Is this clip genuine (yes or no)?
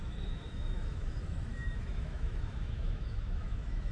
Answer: no